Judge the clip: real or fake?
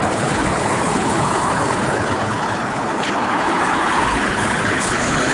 fake